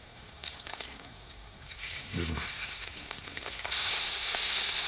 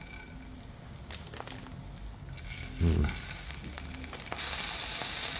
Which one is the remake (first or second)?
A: first